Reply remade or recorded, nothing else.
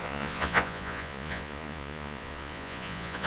remade